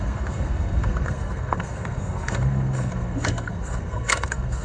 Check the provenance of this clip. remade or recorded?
remade